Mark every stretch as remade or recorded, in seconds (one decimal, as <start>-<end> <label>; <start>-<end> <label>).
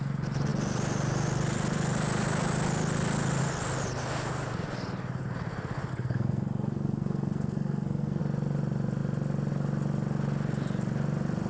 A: 0.0-5.9 recorded; 5.9-8.2 remade; 8.2-11.5 recorded